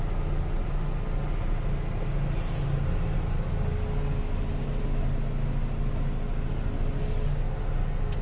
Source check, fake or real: real